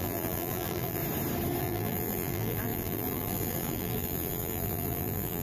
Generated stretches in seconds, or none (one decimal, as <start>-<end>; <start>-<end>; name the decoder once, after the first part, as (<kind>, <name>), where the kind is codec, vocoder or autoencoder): 0.0-1.0 (vocoder, BigVGAN v2); 1.6-5.4